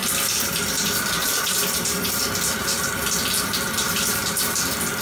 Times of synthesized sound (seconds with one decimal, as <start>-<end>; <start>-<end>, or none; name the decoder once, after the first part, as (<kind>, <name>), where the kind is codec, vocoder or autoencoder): none